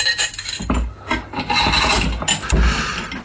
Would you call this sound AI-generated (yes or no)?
no